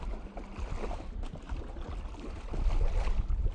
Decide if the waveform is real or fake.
real